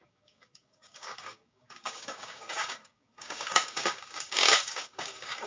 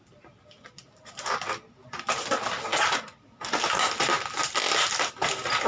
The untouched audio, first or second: second